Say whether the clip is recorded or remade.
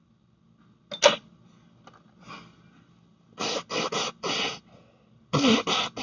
recorded